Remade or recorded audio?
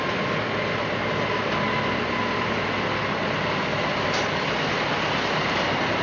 recorded